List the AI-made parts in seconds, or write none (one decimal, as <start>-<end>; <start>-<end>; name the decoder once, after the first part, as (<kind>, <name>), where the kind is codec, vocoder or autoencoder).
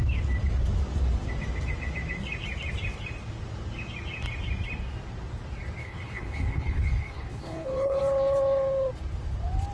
5.8-8.0 (codec, HILCodec)